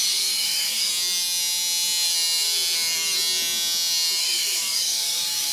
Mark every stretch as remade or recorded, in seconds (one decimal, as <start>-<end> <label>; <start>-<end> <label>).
0.0-0.9 remade; 0.9-4.2 recorded; 4.2-5.5 remade